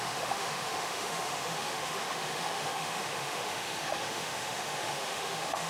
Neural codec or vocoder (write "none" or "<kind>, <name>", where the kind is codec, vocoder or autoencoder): autoencoder, DAC-VAE